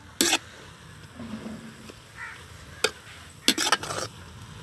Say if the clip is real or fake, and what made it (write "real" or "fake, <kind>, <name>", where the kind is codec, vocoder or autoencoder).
real